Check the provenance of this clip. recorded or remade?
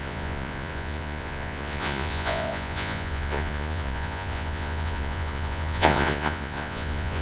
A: remade